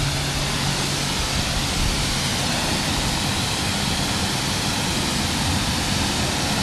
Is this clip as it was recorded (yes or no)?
yes